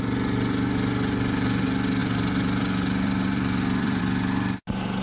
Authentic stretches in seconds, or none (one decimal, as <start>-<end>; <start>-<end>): 0.0-2.0; 4.0-5.0